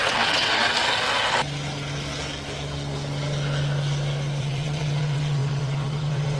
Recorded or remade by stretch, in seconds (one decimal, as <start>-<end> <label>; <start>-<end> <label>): 0.0-0.6 remade; 0.6-4.4 recorded; 4.4-6.4 remade